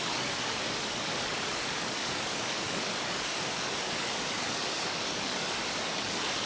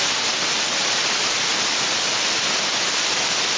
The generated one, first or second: first